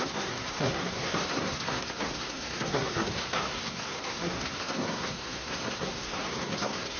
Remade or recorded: remade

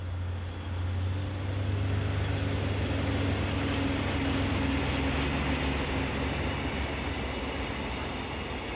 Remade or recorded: recorded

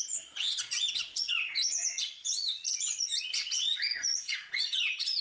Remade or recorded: remade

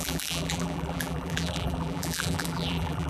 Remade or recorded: remade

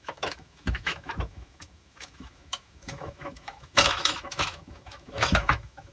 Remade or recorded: remade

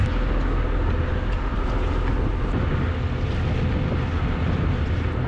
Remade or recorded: recorded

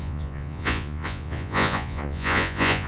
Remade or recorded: remade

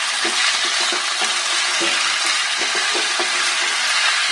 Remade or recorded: recorded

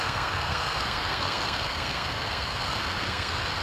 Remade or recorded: remade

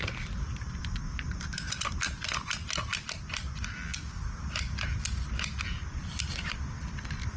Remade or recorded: recorded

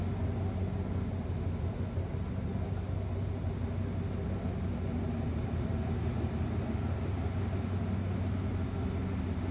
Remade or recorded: recorded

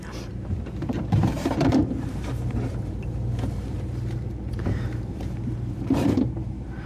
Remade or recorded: remade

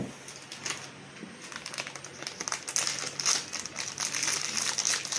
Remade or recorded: recorded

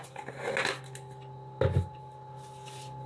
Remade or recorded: recorded